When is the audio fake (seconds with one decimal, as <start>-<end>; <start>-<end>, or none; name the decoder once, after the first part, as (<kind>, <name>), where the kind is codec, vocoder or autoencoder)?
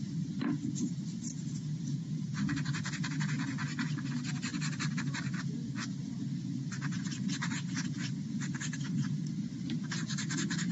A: none